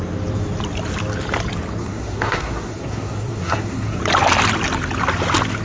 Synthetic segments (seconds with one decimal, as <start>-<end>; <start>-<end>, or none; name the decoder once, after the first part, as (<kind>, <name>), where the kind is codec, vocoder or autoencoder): 1.8-4.0 (codec, SNAC)